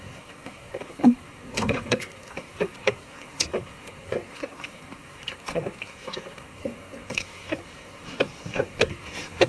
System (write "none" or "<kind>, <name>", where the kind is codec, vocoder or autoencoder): codec, SNAC